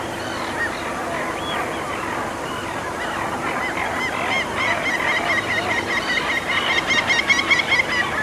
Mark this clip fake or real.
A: real